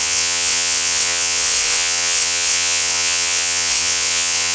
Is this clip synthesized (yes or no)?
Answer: yes